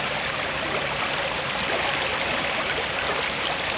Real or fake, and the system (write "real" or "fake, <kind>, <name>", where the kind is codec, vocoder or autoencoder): real